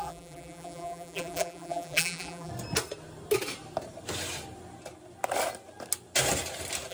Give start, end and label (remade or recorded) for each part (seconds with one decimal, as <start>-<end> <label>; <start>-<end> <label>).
0.0-2.5 remade; 2.5-6.9 recorded